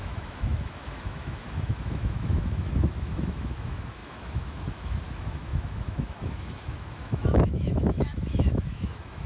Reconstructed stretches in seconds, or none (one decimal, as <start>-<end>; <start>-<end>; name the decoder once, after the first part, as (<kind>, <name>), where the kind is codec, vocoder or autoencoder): 0.0-9.3 (autoencoder, DAC-VAE)